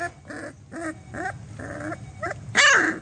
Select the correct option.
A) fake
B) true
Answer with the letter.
B